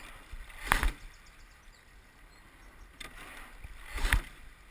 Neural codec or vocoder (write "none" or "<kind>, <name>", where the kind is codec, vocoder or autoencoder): none